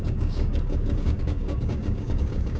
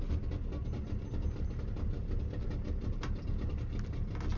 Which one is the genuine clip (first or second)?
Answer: second